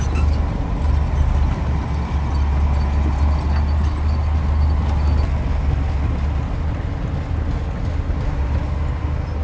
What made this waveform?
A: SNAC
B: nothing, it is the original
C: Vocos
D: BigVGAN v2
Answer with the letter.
B